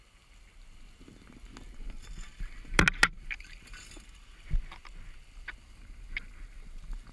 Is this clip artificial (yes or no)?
no